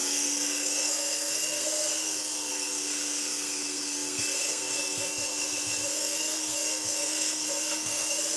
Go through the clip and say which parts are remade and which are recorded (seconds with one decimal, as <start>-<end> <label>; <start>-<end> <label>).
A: 0.0-8.4 remade

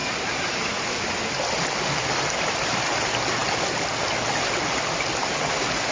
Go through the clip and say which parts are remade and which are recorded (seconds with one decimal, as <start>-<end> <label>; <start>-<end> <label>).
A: 0.0-5.9 recorded

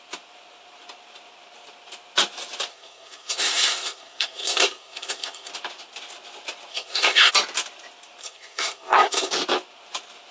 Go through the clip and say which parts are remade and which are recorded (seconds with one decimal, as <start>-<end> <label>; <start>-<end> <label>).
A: 0.0-2.7 recorded; 2.7-5.5 remade; 5.5-6.7 recorded; 6.7-7.3 remade; 7.3-8.2 recorded; 8.2-9.3 remade; 9.3-10.3 recorded